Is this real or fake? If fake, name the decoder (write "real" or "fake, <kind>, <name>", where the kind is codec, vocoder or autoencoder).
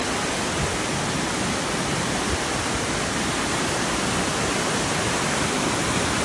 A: real